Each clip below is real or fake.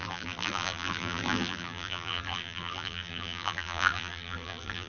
fake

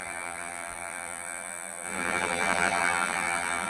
fake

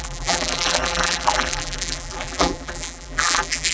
fake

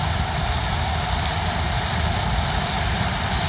real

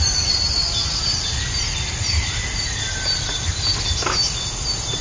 fake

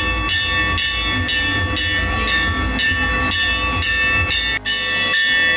real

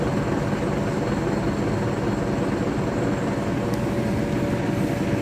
real